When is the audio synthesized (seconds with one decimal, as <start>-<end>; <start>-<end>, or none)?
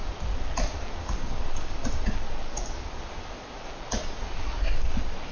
none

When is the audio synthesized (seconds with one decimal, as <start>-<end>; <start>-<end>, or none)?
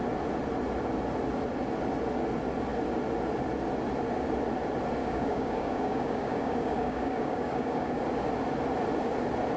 5.0-8.0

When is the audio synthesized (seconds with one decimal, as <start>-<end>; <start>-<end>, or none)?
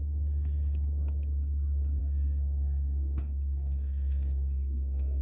2.0-5.2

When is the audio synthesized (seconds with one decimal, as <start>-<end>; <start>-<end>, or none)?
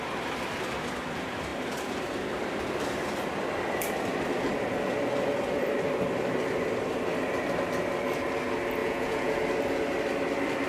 8.8-9.4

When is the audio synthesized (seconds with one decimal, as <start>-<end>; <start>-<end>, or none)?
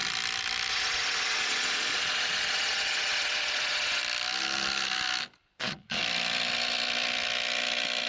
0.7-4.0; 5.4-6.0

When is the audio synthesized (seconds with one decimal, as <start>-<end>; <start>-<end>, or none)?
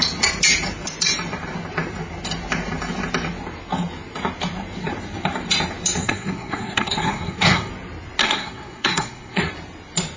6.0-7.7; 8.2-9.5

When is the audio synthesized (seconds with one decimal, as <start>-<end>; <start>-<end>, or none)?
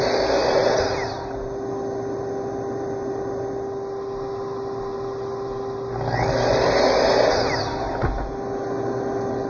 none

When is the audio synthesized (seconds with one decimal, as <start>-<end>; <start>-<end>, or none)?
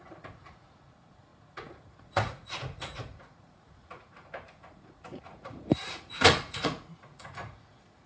0.0-8.1